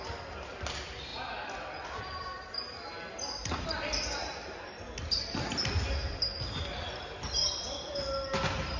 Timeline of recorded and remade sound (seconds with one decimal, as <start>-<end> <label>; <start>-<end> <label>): 0.0-8.8 recorded